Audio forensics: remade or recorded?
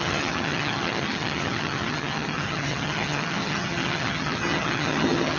remade